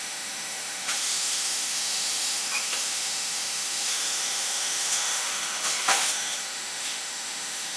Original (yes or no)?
no